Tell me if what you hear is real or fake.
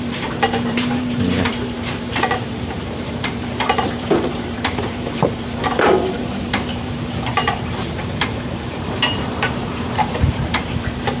fake